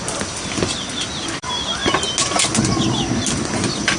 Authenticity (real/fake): real